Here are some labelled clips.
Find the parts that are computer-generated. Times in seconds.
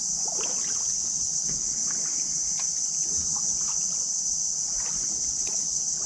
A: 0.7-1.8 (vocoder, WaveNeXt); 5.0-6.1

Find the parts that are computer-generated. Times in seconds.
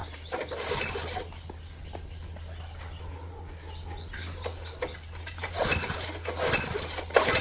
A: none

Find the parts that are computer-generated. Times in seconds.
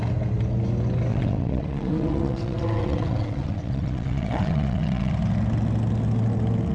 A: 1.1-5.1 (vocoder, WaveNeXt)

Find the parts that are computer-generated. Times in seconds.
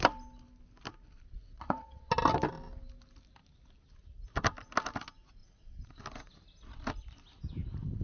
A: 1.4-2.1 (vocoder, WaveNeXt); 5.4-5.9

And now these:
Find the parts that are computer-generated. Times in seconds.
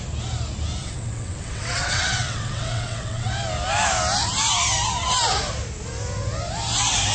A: 0.8-3.3 (vocoder, WaveNeXt)